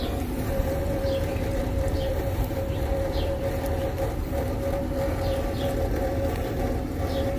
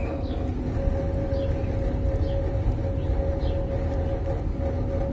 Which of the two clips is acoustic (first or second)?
second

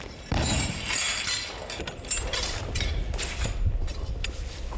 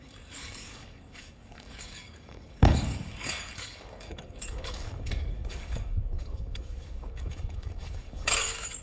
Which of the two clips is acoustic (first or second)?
first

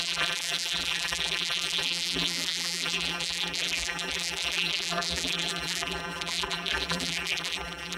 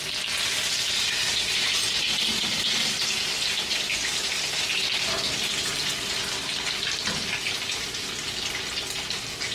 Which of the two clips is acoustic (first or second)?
second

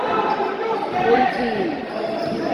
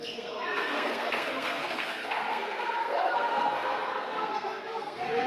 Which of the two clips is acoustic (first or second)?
first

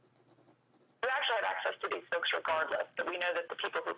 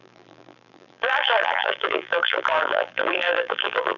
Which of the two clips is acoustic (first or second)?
first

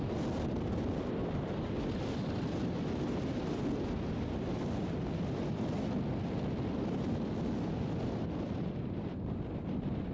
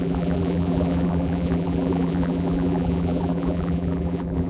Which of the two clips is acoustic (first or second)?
first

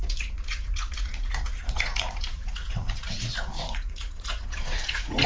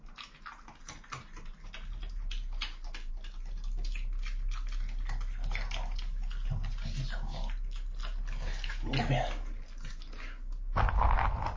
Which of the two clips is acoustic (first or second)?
second